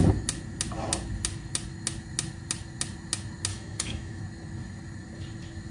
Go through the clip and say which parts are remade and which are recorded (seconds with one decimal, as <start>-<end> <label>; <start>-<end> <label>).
0.0-3.5 recorded; 3.5-4.2 remade; 4.2-5.7 recorded